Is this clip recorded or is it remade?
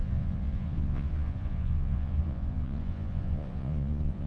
remade